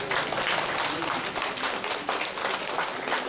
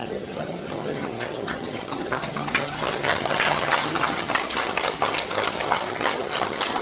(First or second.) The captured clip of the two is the first